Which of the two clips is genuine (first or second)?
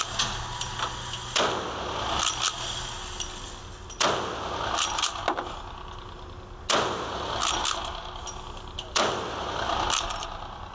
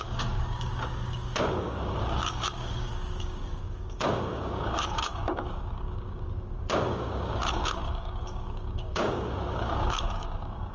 first